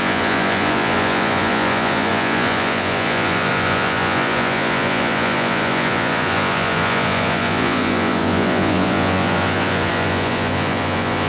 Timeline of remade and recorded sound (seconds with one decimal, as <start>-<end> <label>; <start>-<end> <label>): 0.0-11.3 remade